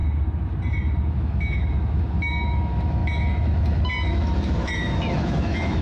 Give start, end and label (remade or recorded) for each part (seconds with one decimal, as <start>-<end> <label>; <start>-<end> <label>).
0.0-1.1 recorded; 1.1-5.8 remade